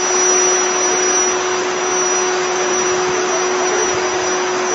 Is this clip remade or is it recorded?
recorded